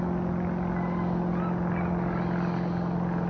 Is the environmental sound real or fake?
real